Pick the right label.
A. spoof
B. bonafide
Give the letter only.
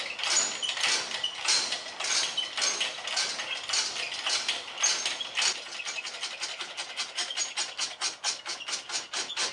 B